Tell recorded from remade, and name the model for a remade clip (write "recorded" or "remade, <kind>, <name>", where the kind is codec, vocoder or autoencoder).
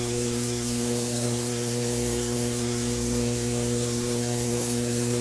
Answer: remade, codec, SNAC